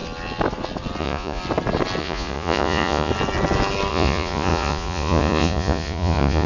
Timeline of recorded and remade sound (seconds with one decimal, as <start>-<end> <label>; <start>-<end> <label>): 0.0-1.0 recorded; 1.0-1.4 remade; 1.4-2.0 recorded; 2.0-3.1 remade; 3.1-3.9 recorded; 3.9-6.5 remade